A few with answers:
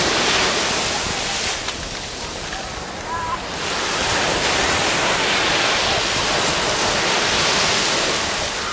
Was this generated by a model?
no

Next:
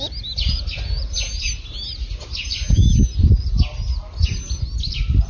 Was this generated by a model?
no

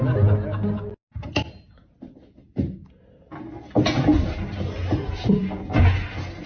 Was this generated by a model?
no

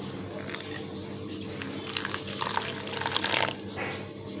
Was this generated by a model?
no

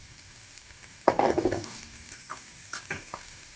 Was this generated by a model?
yes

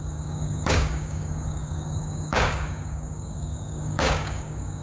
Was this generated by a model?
yes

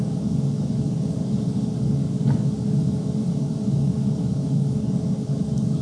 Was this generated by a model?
yes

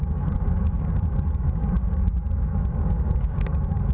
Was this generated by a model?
yes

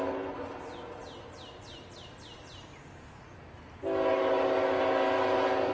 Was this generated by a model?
no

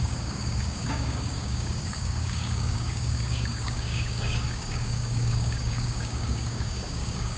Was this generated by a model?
yes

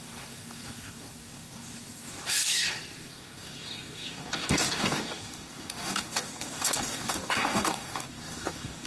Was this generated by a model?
yes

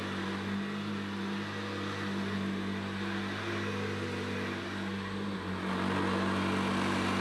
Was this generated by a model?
no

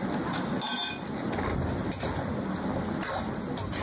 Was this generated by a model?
no